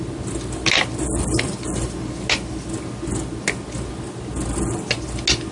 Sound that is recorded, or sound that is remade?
recorded